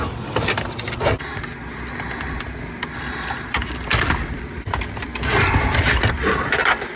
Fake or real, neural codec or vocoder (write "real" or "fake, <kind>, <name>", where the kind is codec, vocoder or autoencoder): real